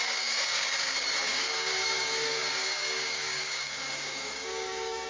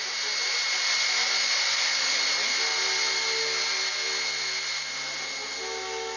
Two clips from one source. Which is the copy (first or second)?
first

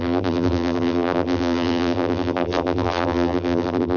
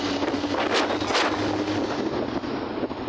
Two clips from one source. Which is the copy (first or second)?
first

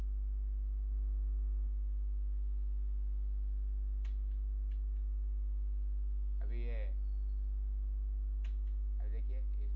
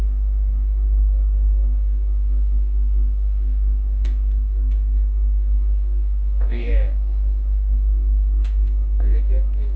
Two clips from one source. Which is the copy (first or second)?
second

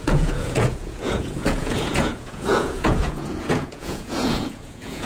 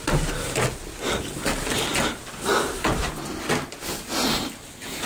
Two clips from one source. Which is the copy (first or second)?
first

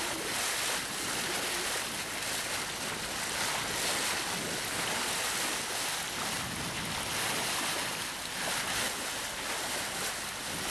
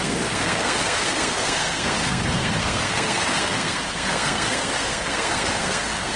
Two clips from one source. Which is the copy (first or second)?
second